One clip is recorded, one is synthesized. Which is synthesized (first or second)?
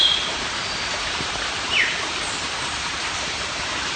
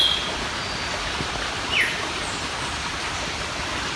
first